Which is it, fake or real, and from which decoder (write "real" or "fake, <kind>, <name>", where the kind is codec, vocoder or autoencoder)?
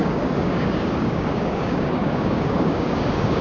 fake, codec, DAC